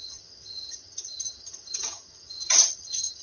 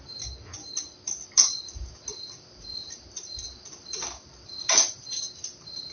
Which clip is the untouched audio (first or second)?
second